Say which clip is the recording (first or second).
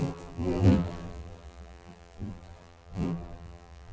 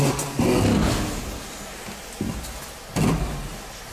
second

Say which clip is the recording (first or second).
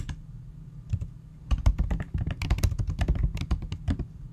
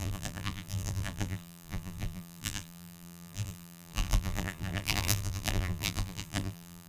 first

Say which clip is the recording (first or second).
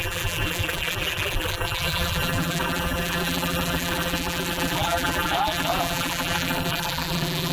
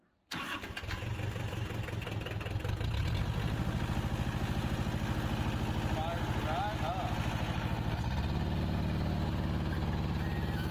second